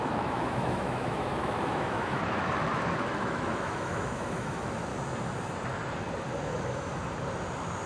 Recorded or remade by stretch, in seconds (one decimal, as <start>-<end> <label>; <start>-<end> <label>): 0.0-4.9 remade; 4.9-6.4 recorded; 6.4-6.9 remade; 6.9-7.9 recorded